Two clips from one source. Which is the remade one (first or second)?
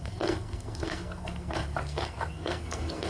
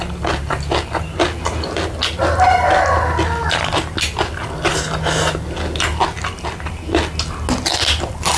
first